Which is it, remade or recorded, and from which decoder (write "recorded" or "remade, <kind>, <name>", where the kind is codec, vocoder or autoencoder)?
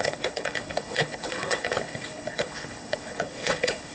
remade, codec, HILCodec